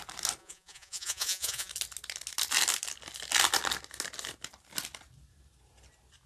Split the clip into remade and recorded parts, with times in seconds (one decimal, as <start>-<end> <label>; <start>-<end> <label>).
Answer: 0.0-0.4 recorded; 0.4-1.7 remade; 1.7-6.3 recorded